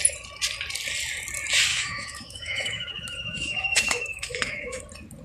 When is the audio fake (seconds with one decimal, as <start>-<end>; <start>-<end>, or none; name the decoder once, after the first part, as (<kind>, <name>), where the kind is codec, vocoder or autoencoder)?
1.7-4.8 (autoencoder, DAC-VAE)